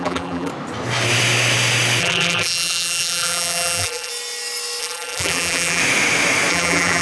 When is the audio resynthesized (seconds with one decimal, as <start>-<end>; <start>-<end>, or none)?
0.0-0.5; 2.0-4.1; 4.8-5.8; 6.5-7.0